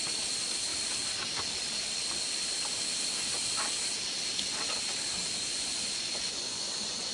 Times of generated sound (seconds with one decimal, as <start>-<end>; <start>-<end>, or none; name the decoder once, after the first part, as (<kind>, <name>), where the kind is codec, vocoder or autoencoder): 5.5-7.1 (vocoder, Vocos)